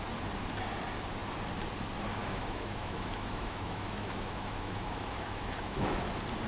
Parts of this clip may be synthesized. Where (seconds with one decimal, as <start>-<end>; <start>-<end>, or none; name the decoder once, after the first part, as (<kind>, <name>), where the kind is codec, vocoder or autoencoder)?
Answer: 2.2-6.1 (autoencoder, DAC-VAE)